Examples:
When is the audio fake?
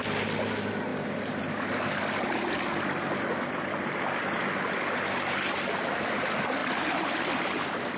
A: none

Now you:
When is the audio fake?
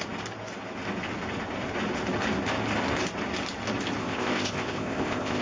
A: 4.0-5.4 (codec, ZipCodec)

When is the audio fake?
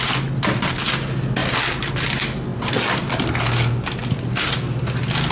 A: none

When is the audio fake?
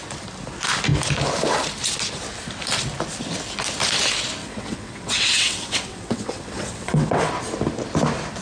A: 4.4-7.3 (vocoder, WaveNeXt)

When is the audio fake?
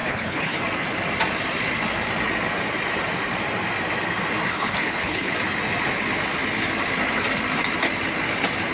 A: 0.0-0.6 (codec, HILCodec); 4.5-5.3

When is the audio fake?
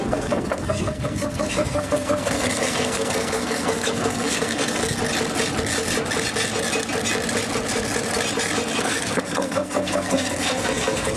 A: 0.0-4.8 (codec, SNAC); 8.8-11.2